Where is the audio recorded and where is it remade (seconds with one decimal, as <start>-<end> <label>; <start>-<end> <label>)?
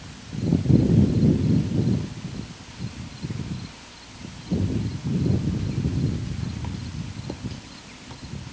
0.0-8.5 recorded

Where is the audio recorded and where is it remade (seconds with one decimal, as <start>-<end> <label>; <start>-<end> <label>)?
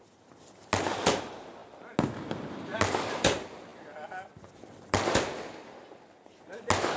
0.0-7.0 recorded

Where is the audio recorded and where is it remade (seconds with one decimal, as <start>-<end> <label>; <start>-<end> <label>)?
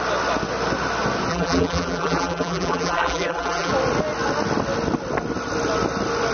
0.0-1.3 recorded; 1.3-3.7 remade; 3.7-6.3 recorded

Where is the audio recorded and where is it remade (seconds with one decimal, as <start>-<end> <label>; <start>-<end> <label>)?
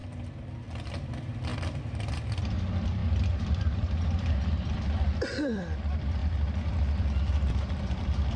0.0-0.5 recorded; 0.5-1.5 remade; 1.5-2.3 recorded; 2.3-6.2 remade; 6.2-8.4 recorded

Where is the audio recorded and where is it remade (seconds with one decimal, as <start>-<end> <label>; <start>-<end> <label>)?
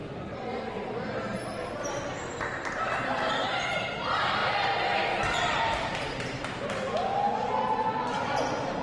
0.0-4.4 remade; 4.4-5.4 recorded; 5.4-7.1 remade; 7.1-8.0 recorded; 8.0-8.8 remade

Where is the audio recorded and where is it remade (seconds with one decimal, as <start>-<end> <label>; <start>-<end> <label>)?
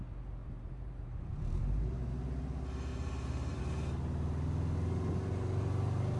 0.0-0.4 recorded; 0.4-2.1 remade; 2.1-2.9 recorded; 2.9-3.6 remade; 3.6-6.2 recorded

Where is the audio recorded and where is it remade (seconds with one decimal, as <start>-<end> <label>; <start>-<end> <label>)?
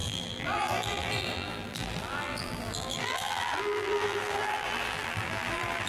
0.0-5.9 remade